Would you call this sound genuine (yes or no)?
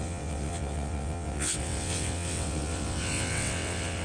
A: no